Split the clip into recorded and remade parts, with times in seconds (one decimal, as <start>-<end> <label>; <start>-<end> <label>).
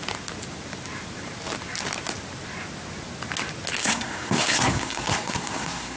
0.0-3.8 recorded; 3.8-6.0 remade